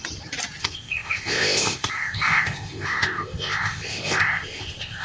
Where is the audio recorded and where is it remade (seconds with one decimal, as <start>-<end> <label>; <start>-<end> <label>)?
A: 0.0-0.6 recorded; 0.6-5.0 remade